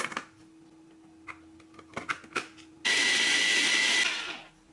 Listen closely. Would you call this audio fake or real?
real